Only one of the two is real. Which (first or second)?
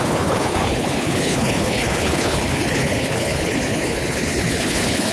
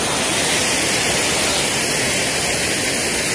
second